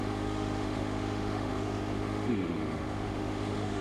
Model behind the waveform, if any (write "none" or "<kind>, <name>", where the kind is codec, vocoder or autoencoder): autoencoder, DAC-VAE